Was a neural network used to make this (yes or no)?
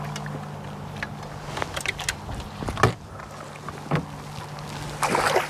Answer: no